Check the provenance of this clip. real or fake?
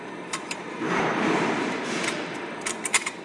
fake